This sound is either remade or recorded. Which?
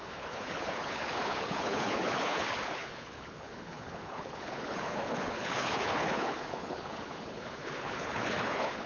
remade